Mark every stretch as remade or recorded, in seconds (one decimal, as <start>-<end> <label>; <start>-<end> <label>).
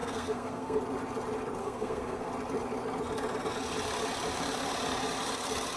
0.0-0.8 remade; 0.8-1.6 recorded; 1.6-2.3 remade; 2.3-5.8 recorded